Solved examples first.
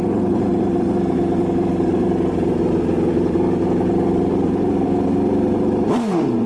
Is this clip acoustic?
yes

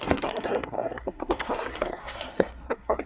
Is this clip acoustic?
no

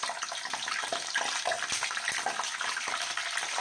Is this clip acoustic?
yes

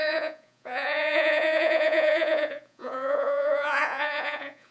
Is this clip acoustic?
no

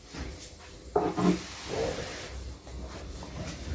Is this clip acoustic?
yes